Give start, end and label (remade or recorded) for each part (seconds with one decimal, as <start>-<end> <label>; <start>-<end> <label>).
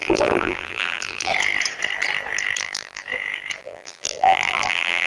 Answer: 0.0-1.3 remade; 1.3-2.6 recorded; 2.6-3.0 remade; 3.0-3.6 recorded; 3.6-5.1 remade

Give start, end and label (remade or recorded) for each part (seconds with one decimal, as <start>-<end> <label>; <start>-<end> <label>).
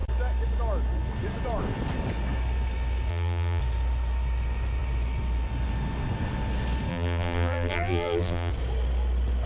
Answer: 0.0-3.1 recorded; 3.1-3.6 remade; 3.6-6.9 recorded; 6.9-8.5 remade; 8.5-9.5 recorded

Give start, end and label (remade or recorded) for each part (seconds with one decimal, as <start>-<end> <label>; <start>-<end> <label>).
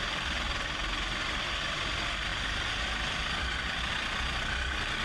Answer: 0.0-2.3 recorded; 2.3-3.9 remade; 3.9-5.0 recorded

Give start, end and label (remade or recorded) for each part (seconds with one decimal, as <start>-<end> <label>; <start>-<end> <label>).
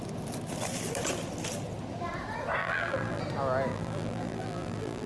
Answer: 0.0-2.6 recorded; 2.6-3.2 remade; 3.2-3.7 recorded; 3.7-5.1 remade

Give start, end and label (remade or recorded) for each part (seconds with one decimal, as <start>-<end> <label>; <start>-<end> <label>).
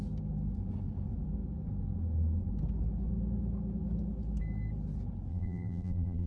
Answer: 0.0-5.3 recorded; 5.3-6.3 remade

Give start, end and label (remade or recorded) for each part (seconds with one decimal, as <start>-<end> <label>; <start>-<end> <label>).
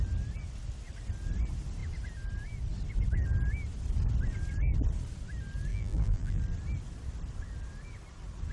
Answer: 0.0-5.7 recorded; 5.7-6.4 remade; 6.4-8.5 recorded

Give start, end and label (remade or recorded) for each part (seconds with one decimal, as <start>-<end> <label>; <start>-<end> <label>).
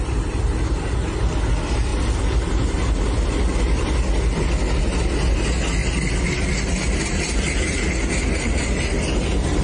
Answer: 0.0-9.6 recorded